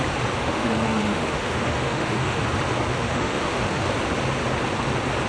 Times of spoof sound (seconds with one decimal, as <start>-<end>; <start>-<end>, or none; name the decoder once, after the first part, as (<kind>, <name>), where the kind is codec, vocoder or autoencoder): 0.4-2.4 (autoencoder, DAC-VAE); 2.9-3.9